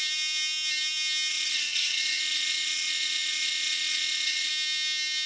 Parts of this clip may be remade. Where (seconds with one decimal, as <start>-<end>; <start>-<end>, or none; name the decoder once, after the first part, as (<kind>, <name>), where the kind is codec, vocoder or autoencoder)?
1.3-4.5 (vocoder, WaveNeXt)